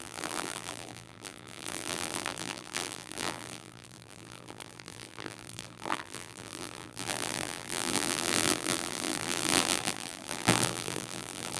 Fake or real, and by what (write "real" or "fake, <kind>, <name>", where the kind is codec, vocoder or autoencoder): fake, vocoder, BigVGAN v2